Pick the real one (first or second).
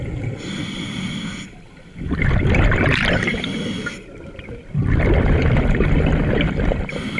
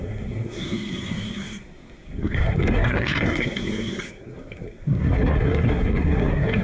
first